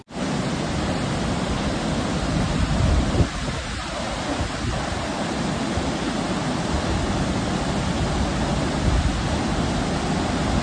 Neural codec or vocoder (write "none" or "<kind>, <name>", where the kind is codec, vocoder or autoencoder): none